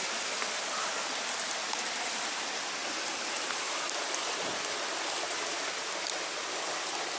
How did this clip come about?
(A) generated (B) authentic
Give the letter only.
B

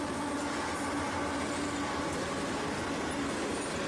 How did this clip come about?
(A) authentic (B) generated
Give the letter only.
A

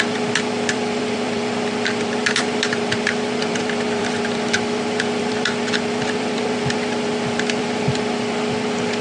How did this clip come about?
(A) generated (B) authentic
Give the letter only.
A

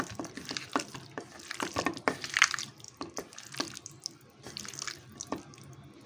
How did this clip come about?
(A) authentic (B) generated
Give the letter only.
A